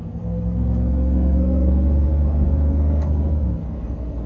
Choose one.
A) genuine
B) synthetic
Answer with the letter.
B